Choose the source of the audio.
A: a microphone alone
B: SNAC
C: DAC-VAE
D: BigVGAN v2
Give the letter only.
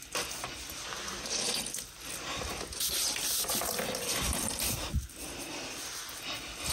A